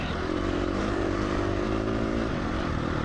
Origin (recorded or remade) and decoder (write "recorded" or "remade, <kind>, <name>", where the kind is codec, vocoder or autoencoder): remade, vocoder, BigVGAN v2